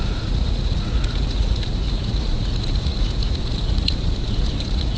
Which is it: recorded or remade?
remade